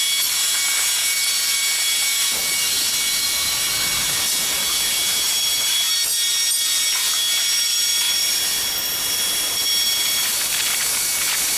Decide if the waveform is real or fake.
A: real